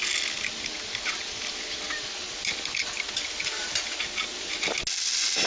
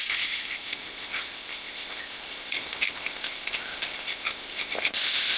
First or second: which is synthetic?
second